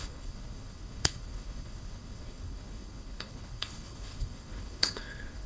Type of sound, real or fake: fake